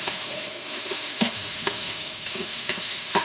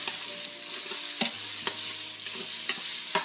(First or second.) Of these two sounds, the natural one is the second